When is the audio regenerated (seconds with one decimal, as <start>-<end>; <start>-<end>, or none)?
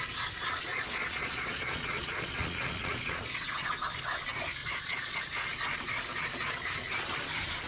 0.7-3.7; 4.6-5.2; 6.1-6.6